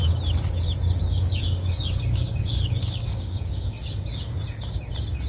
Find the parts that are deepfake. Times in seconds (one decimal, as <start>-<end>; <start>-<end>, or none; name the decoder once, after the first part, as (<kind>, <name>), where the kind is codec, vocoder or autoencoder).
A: 1.0-3.8 (codec, DAC)